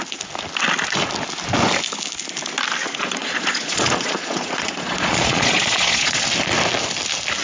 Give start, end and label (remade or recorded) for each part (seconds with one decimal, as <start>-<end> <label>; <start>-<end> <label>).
0.0-2.8 recorded; 2.8-6.2 remade; 6.2-7.4 recorded